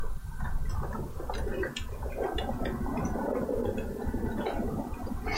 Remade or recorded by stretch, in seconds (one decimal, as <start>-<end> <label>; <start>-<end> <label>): 0.0-0.7 remade; 0.7-5.4 recorded